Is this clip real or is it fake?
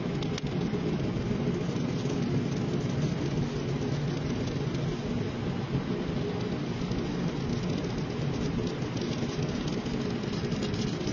real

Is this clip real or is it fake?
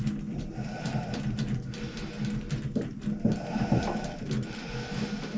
real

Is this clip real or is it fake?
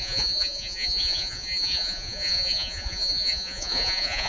fake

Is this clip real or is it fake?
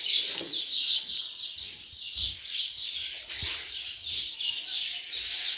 real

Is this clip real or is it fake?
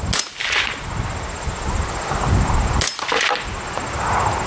real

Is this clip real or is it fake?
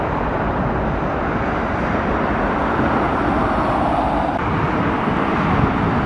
real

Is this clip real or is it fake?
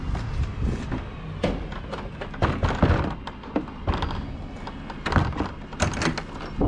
real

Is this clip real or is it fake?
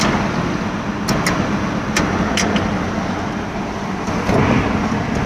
real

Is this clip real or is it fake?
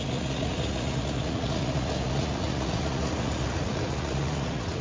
fake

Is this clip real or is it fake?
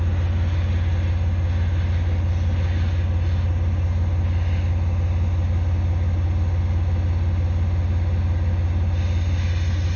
real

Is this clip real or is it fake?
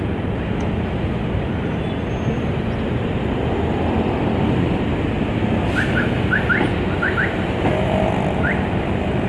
real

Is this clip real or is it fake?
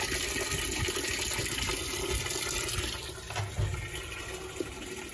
real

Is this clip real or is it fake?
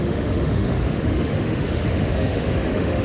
fake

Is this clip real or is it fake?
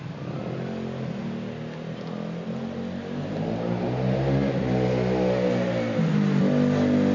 real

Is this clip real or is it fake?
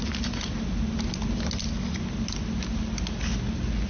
real